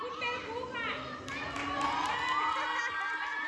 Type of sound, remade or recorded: recorded